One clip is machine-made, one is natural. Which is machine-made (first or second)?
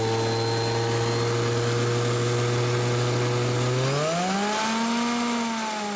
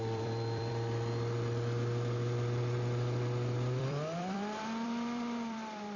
second